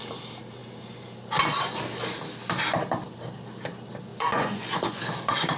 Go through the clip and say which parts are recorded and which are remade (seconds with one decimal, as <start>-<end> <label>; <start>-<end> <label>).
0.0-4.1 recorded; 4.1-5.0 remade; 5.0-5.6 recorded